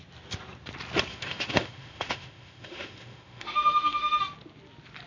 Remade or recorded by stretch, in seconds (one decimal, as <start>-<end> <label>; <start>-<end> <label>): 0.0-1.1 recorded; 1.1-4.2 remade; 4.2-5.1 recorded